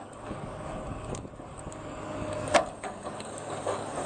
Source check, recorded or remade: remade